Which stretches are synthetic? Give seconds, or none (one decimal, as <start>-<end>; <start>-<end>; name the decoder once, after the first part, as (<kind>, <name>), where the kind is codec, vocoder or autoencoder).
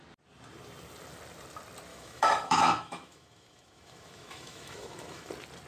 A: 1.9-5.3 (autoencoder, DAC-VAE)